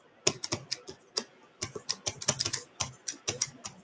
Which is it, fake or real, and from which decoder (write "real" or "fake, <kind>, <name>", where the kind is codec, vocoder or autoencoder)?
real